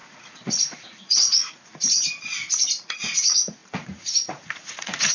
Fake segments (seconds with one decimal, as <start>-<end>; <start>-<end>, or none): 0.0-2.0; 2.8-5.1

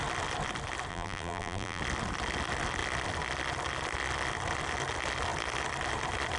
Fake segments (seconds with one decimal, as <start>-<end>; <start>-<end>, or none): 0.9-1.8

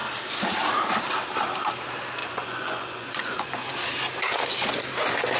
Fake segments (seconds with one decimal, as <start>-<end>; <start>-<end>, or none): 2.2-3.7

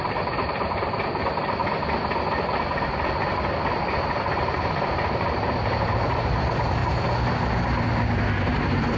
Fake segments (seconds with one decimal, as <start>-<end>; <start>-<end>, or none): 0.0-1.6; 4.1-6.8; 8.4-9.0

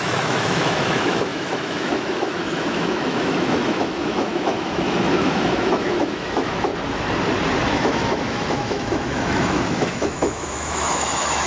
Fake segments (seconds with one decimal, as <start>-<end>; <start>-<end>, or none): 0.0-6.7; 7.7-11.5

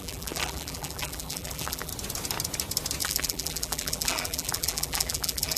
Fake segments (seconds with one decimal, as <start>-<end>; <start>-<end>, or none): 0.0-1.9; 3.0-5.6

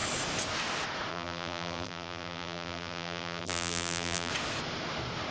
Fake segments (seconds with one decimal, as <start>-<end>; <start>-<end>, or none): 1.1-4.3

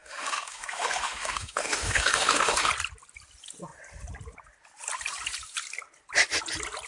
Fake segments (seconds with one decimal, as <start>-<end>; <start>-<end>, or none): 0.0-2.7